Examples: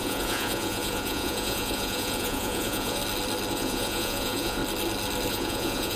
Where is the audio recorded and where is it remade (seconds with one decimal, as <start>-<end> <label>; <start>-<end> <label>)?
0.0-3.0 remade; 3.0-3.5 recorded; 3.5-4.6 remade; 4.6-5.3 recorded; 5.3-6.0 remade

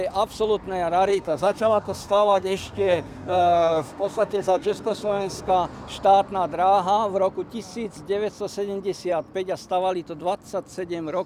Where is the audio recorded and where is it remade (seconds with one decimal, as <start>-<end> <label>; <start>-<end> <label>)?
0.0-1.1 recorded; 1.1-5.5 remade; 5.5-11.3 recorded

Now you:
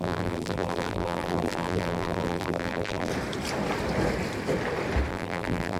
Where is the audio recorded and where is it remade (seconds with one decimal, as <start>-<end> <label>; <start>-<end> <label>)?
0.0-3.1 remade; 3.1-5.1 recorded; 5.1-5.8 remade